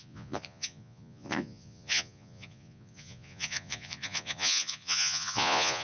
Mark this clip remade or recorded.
remade